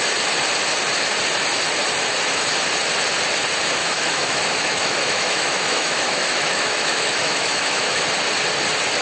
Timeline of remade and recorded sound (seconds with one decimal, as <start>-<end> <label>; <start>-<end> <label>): 0.0-3.8 recorded; 3.8-8.0 remade; 8.0-9.0 recorded